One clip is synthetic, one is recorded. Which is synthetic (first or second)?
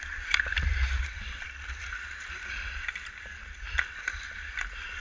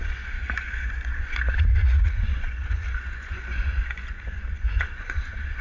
second